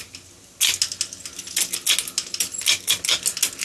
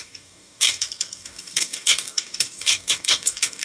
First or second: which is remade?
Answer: second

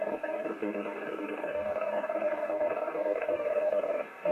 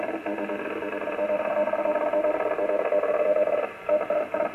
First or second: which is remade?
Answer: first